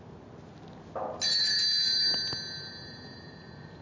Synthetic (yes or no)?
no